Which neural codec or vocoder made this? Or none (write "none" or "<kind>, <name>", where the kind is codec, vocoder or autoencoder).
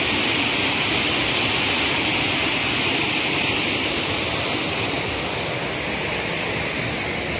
none